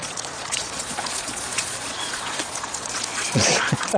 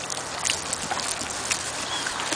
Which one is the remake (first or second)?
first